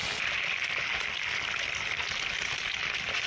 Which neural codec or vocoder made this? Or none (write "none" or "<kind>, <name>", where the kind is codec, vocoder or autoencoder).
none